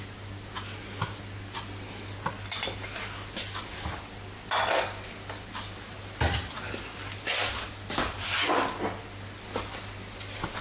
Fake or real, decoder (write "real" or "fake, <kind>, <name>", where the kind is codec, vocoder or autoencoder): real